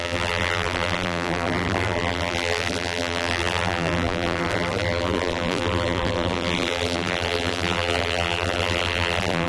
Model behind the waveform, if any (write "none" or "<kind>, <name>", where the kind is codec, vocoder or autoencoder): vocoder, BigVGAN v2